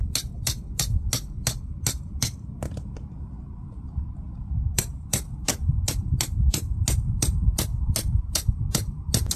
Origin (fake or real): real